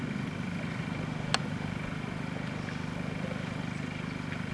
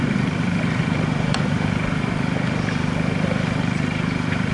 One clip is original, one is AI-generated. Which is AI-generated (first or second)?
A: second